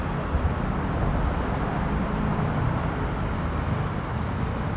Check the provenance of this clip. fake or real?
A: real